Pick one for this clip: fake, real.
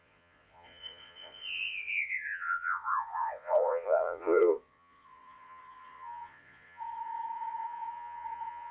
fake